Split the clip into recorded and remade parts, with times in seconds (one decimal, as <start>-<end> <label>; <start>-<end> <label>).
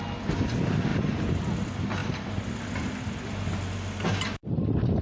0.0-0.9 recorded; 0.9-1.6 remade; 1.6-2.0 recorded; 2.0-3.4 remade; 3.4-5.0 recorded